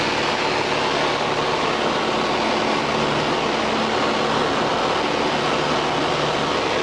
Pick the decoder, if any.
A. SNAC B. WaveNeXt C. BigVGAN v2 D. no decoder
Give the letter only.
D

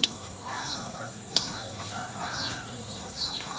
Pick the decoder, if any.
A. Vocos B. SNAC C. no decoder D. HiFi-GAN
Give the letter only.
B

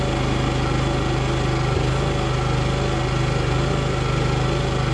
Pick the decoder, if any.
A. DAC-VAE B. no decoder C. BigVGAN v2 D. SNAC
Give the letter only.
B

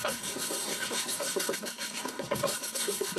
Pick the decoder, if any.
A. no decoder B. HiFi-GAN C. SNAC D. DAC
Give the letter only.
C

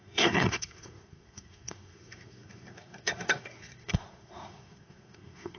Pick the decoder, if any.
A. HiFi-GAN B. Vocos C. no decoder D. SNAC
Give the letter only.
D